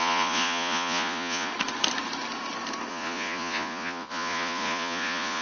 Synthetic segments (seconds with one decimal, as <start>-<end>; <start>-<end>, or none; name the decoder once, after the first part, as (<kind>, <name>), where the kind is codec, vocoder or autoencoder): 0.0-1.5 (vocoder, Vocos); 2.9-5.4